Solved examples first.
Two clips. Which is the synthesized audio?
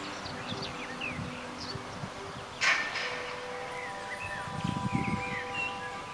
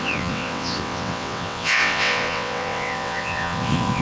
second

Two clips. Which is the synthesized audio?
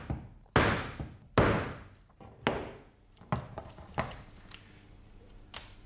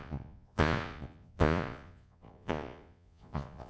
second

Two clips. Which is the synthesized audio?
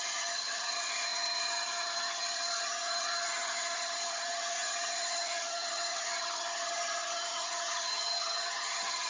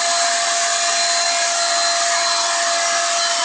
first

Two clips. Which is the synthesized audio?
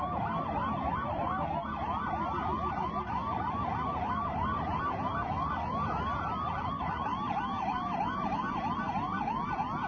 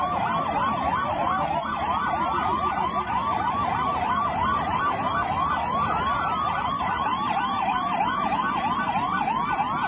second